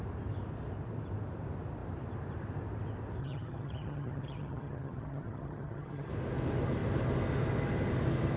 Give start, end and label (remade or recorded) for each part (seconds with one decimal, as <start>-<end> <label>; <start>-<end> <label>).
0.0-3.2 recorded; 3.2-6.1 remade; 6.1-8.4 recorded